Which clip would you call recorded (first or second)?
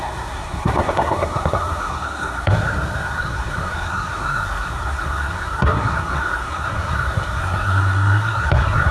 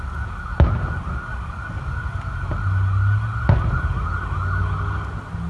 second